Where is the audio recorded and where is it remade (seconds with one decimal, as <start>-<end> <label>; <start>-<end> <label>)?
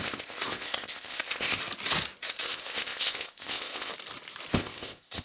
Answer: 0.0-1.6 remade; 1.6-2.2 recorded; 2.2-3.9 remade; 3.9-4.5 recorded; 4.5-5.2 remade